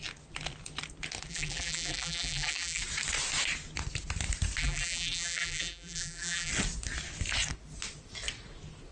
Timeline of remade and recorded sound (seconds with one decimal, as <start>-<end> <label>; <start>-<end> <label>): 0.0-1.3 recorded; 1.3-2.8 remade; 2.8-4.6 recorded; 4.6-6.5 remade; 6.5-8.9 recorded